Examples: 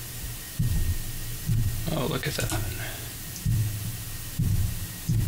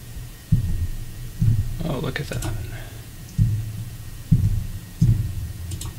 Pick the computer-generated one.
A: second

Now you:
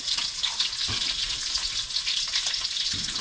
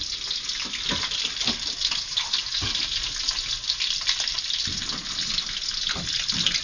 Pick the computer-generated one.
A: first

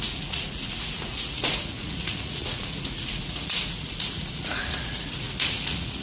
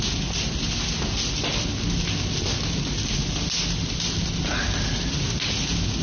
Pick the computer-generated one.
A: first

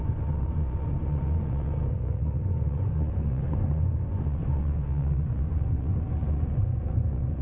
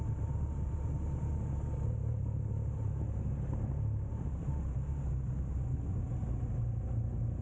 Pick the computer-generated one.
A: first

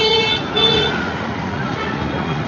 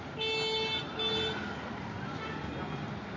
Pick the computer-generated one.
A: first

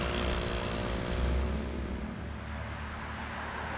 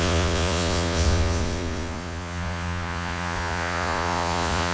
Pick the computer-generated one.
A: second